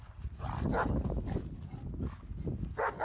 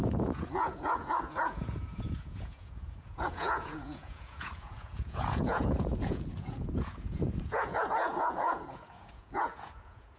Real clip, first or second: first